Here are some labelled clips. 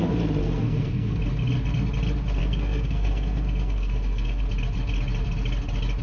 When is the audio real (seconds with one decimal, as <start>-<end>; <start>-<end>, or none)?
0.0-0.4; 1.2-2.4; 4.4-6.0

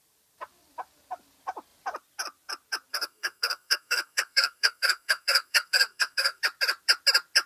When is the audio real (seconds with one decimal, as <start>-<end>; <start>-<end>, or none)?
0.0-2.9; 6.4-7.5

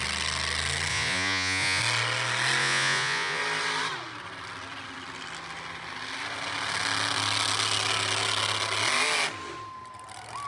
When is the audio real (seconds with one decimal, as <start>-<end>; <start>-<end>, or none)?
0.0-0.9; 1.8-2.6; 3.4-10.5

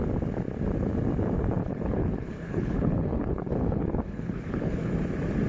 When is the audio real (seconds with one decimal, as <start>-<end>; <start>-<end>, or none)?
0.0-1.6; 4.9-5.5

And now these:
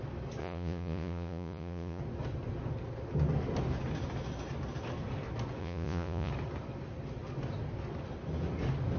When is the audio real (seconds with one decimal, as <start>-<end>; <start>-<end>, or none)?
0.0-0.4; 2.0-5.6; 6.3-9.0